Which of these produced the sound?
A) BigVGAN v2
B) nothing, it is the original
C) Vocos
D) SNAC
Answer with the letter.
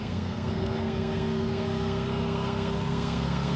D